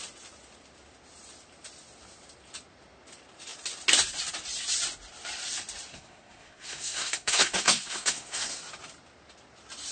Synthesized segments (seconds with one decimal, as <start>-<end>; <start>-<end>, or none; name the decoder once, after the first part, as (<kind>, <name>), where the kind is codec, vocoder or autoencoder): 5.9-8.6 (codec, SNAC)